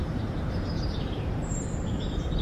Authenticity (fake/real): fake